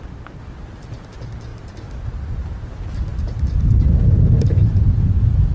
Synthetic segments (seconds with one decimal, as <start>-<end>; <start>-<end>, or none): 0.0-5.5